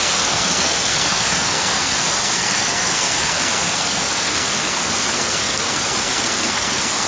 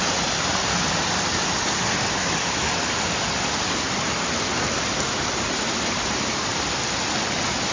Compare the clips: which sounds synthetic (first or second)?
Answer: first